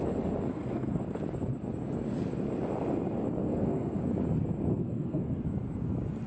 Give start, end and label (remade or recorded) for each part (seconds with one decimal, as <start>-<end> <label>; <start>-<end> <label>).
0.0-0.5 recorded; 0.5-1.0 remade; 1.0-3.4 recorded; 3.4-4.0 remade; 4.0-4.7 recorded; 4.7-5.4 remade; 5.4-6.3 recorded